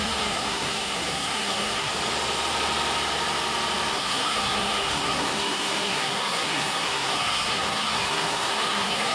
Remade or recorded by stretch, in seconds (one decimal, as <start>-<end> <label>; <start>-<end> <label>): 0.0-1.9 remade; 1.9-3.9 recorded; 3.9-9.1 remade